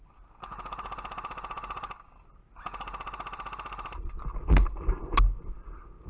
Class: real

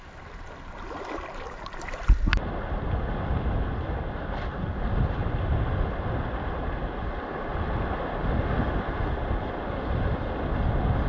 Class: real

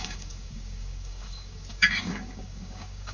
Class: fake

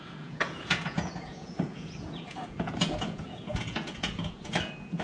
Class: fake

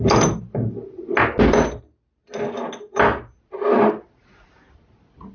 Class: real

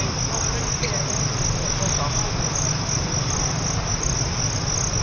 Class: real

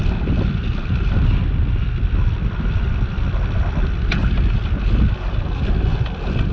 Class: real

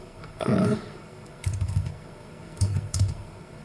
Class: fake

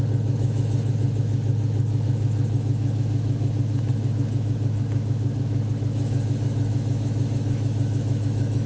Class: fake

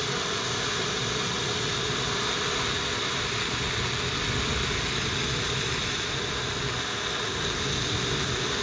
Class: real